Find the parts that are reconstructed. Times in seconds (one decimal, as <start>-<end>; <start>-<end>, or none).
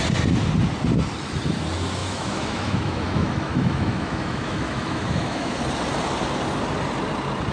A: 2.0-5.6